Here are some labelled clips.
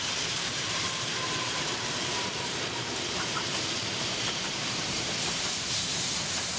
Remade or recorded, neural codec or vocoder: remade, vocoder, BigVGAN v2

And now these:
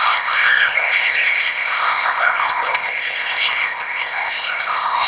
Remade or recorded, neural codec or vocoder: remade, codec, ZipCodec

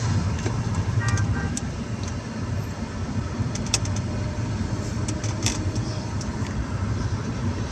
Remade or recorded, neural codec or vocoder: remade, vocoder, BigVGAN v2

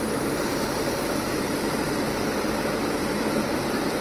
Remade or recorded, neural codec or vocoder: remade, vocoder, BigVGAN v2